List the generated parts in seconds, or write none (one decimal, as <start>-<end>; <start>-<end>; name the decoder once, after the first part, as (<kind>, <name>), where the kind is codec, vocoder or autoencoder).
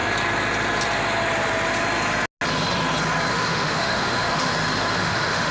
3.3-4.5 (autoencoder, DAC-VAE); 5.0-5.5